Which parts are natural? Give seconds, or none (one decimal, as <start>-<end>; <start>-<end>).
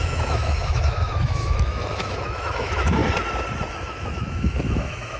3.0-3.7